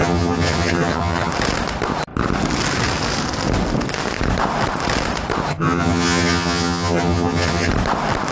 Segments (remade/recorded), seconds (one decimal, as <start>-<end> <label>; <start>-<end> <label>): 0.0-1.3 remade; 1.3-5.5 recorded; 5.5-7.7 remade; 7.7-8.3 recorded